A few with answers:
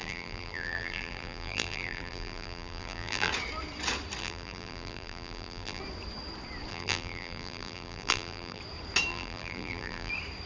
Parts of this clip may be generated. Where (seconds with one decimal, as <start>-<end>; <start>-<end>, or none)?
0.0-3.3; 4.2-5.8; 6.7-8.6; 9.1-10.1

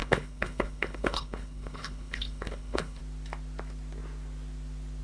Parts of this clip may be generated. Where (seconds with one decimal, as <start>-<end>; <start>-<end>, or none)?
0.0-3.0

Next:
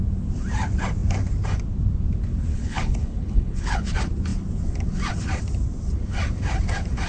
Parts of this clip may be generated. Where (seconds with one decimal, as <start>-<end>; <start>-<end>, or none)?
2.5-3.9

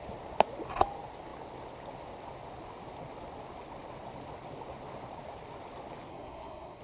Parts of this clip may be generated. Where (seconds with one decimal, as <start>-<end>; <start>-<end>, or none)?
6.1-6.8